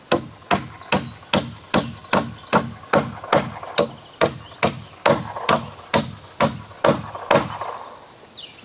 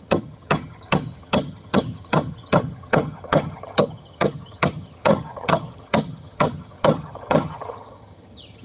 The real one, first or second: first